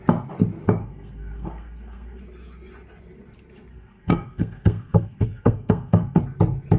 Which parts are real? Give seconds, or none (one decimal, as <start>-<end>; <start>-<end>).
0.0-0.8; 2.2-3.7; 6.2-6.8